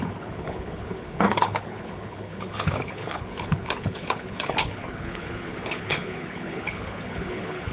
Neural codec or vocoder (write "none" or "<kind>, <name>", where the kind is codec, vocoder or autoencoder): codec, HILCodec